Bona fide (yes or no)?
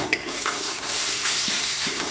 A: no